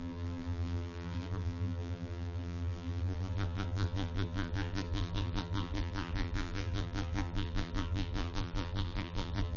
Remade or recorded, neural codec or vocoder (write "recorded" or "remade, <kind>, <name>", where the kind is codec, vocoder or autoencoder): remade, vocoder, BigVGAN v2